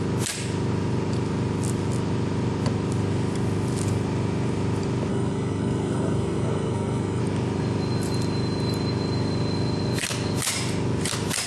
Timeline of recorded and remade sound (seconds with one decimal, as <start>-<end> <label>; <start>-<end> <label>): 0.0-5.1 recorded; 5.1-7.2 remade; 7.2-11.5 recorded